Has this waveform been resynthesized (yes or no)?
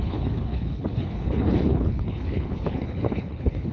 yes